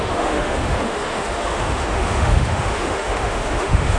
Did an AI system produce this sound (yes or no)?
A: yes